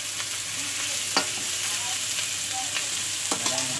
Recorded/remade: recorded